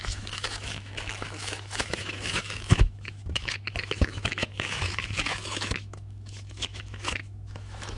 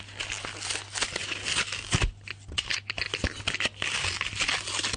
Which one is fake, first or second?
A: first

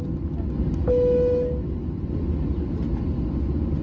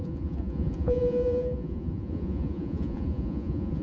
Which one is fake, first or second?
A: second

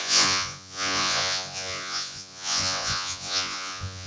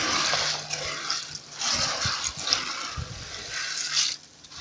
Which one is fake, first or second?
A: first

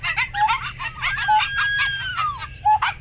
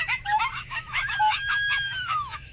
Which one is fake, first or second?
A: second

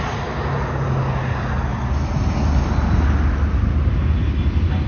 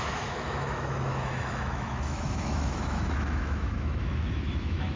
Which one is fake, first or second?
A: second